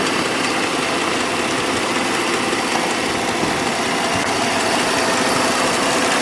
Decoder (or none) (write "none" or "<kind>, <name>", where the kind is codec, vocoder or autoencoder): none